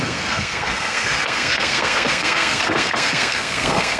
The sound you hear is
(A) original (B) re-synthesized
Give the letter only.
B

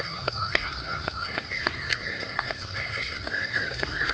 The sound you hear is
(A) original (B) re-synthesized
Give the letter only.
B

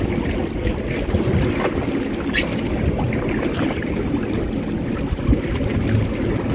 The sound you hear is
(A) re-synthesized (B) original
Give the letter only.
B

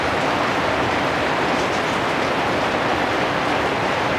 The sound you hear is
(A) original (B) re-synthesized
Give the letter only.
A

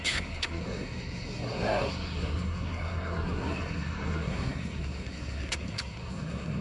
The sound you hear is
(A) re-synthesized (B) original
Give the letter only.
A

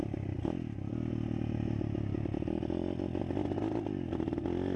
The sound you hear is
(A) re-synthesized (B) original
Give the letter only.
B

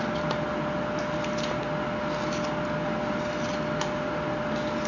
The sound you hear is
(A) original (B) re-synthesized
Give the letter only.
A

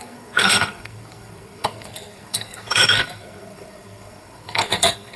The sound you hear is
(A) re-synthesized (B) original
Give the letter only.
A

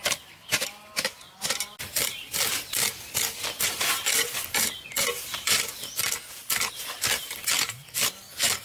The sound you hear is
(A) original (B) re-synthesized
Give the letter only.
A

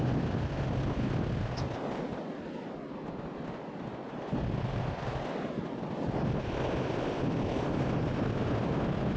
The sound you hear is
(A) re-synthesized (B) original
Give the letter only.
B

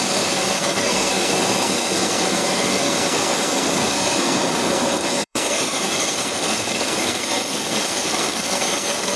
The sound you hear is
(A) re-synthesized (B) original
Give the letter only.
A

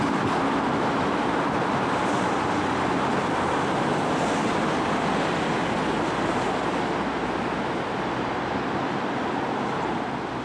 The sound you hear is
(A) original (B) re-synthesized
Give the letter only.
A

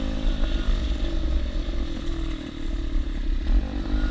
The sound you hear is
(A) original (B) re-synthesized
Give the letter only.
A